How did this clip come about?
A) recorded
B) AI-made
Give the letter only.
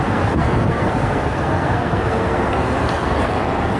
B